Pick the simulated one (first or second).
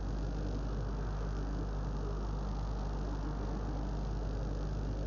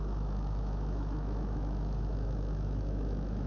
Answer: second